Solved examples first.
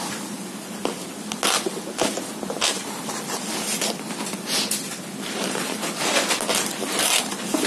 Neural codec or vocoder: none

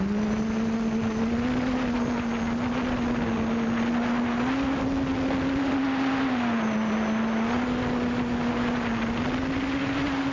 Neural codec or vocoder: none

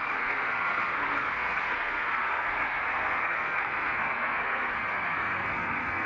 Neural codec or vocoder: codec, SNAC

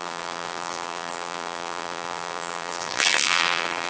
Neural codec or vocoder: vocoder, BigVGAN v2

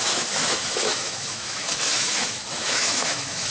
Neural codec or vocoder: autoencoder, DAC-VAE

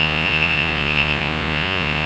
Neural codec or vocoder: vocoder, Vocos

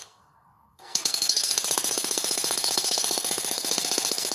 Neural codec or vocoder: codec, SNAC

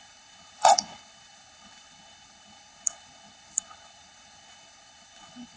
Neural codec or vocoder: codec, HILCodec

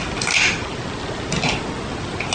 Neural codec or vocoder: none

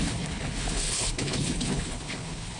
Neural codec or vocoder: codec, HILCodec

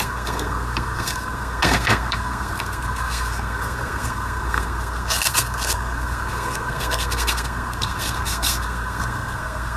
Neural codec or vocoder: codec, SNAC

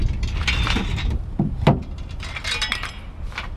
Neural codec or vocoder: none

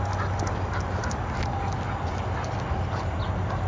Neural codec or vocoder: none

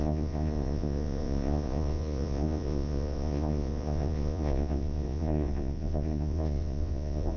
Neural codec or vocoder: vocoder, Vocos